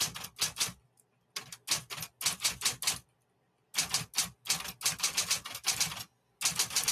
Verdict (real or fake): real